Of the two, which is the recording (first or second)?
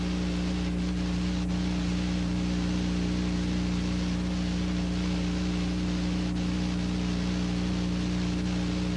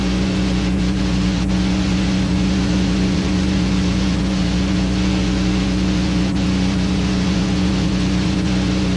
first